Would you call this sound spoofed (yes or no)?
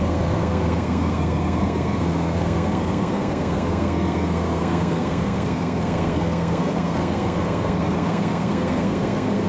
yes